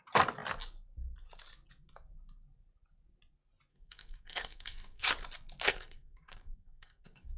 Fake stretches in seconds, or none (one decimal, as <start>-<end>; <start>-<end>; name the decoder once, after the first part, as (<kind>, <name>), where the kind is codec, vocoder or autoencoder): 3.7-5.1 (codec, SNAC); 5.7-7.4